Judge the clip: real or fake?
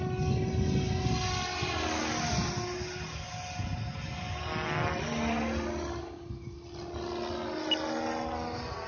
real